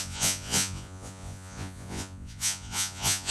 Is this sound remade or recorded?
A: remade